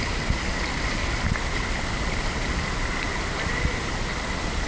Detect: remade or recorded recorded